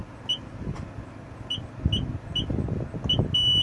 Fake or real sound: real